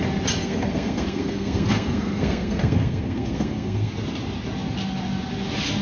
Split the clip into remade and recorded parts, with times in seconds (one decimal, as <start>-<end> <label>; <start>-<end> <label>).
0.0-0.4 recorded; 0.4-3.9 remade; 3.9-5.8 recorded